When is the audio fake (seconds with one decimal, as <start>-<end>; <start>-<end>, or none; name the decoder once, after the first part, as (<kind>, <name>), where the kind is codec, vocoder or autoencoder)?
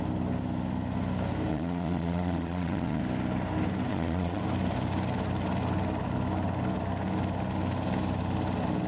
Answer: 1.5-3.0 (vocoder, Vocos); 3.9-4.4